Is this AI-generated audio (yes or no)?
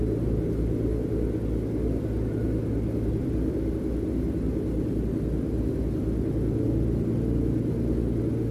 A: no